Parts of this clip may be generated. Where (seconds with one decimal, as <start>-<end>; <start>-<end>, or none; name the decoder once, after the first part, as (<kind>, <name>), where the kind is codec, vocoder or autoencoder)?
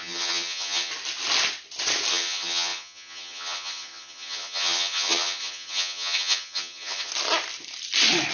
0.0-0.9 (vocoder, HiFi-GAN); 2.1-7.1